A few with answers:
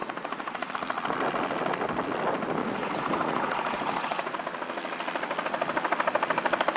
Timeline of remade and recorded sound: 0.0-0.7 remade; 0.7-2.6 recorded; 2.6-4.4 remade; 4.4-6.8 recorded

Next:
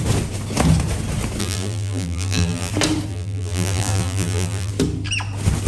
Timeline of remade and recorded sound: 0.0-1.4 recorded; 1.4-2.7 remade; 2.7-3.1 recorded; 3.1-4.7 remade; 4.7-5.7 recorded

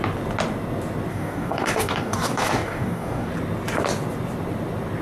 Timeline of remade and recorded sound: 0.0-1.1 recorded; 1.1-3.3 remade; 3.3-5.0 recorded